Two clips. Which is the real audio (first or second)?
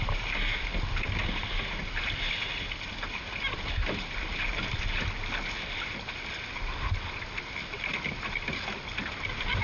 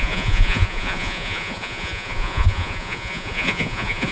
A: first